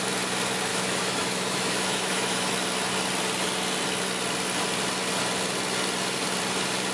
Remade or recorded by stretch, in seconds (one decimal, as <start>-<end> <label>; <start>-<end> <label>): 0.0-0.7 recorded; 0.7-2.5 remade; 2.5-6.9 recorded